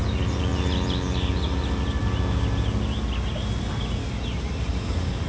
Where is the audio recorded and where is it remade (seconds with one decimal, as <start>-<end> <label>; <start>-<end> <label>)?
0.0-5.3 recorded